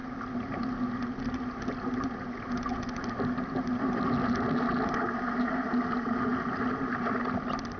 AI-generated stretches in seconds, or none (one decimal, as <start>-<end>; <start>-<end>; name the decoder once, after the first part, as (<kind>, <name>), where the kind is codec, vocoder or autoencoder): 6.3-6.9 (vocoder, BigVGAN v2)